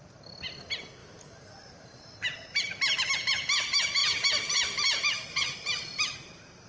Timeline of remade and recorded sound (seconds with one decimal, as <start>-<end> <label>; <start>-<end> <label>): 0.0-1.0 recorded; 1.0-3.1 remade; 3.1-4.0 recorded; 4.0-6.7 remade